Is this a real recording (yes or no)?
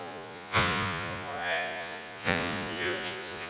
no